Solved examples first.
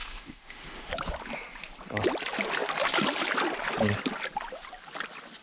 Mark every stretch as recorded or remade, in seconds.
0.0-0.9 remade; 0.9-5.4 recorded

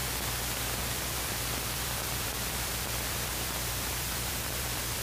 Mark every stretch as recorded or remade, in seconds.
0.0-0.8 recorded; 0.8-5.0 remade